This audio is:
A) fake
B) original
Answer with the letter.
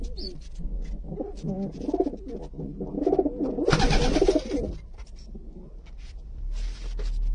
B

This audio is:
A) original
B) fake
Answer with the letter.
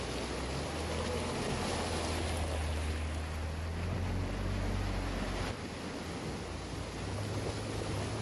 A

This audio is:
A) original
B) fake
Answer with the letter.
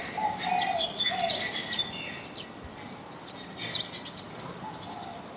A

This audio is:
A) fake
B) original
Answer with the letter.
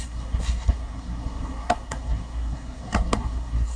A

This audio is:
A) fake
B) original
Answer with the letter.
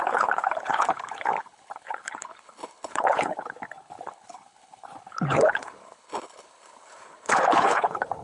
A